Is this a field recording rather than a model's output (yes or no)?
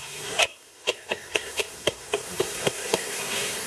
no